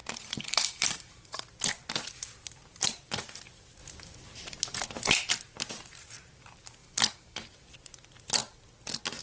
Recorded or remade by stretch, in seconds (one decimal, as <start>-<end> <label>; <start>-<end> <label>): 0.0-1.4 remade; 1.4-6.8 recorded; 6.8-7.4 remade; 7.4-9.2 recorded